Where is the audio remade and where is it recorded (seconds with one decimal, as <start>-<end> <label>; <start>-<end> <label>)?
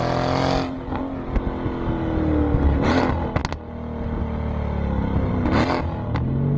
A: 0.0-6.6 recorded